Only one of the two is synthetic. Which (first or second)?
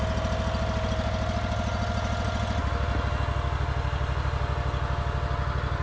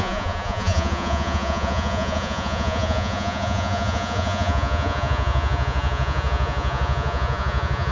second